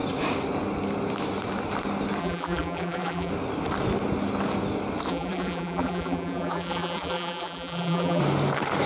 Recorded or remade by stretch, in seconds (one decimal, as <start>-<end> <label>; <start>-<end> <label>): 0.0-2.2 recorded; 2.2-3.3 remade; 3.3-5.1 recorded; 5.1-8.2 remade; 8.2-8.9 recorded